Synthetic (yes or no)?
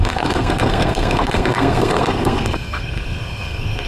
yes